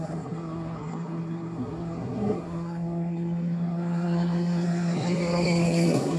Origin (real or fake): fake